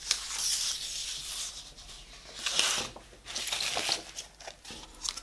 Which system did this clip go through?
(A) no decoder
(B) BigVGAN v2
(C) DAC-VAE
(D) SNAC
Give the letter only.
A